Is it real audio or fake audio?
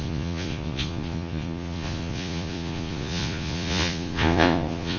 fake